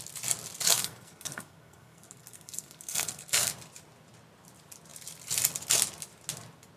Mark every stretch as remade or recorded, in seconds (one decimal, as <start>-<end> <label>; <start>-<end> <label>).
0.0-0.7 recorded; 0.7-3.5 remade; 3.5-6.8 recorded